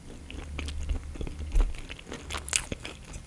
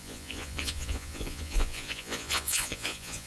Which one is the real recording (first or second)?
first